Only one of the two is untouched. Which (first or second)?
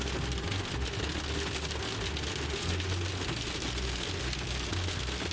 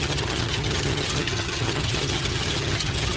first